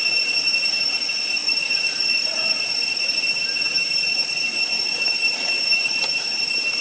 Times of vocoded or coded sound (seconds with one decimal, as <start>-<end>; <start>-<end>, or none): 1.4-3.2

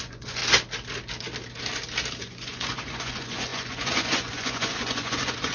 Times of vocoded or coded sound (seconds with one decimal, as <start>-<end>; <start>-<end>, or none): 0.0-0.4; 2.2-5.5

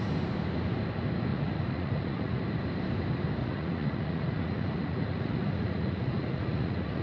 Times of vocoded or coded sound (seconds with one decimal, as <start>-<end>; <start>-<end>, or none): 1.3-2.4; 3.4-7.0

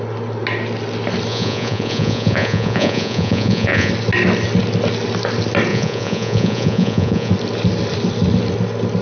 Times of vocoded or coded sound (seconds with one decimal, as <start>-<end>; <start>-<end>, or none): 1.3-3.9; 5.7-7.3

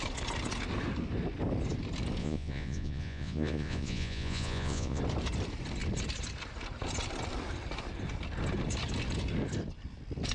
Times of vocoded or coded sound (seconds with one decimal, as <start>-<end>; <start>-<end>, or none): 2.2-5.0

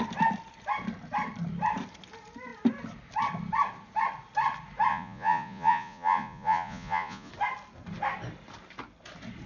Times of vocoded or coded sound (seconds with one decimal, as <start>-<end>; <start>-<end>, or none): 4.9-7.3

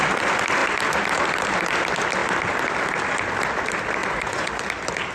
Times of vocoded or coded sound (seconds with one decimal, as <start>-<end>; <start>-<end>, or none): 4.0-4.5

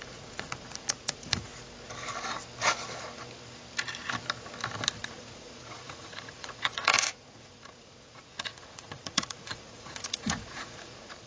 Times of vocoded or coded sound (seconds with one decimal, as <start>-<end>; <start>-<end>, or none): 0.0-1.5; 5.1-11.3